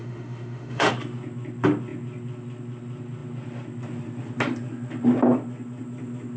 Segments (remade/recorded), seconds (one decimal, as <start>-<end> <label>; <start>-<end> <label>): 0.0-0.9 remade; 0.9-6.4 recorded